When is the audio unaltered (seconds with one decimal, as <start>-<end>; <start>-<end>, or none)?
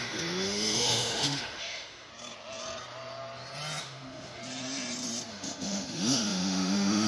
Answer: 2.1-3.8; 4.4-5.3